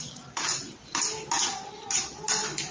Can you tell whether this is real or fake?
real